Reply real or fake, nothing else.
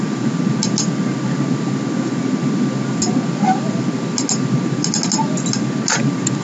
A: real